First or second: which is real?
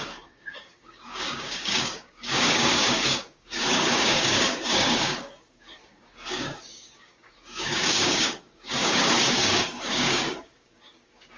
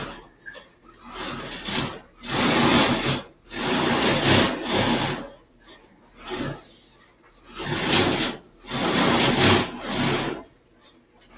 second